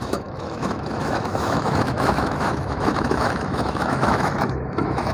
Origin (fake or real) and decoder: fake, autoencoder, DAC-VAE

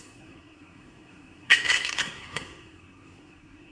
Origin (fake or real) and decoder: fake, codec, SNAC